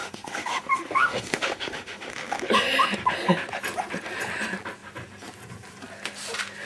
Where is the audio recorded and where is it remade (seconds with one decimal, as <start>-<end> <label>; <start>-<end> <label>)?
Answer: 0.0-2.5 remade; 2.5-6.7 recorded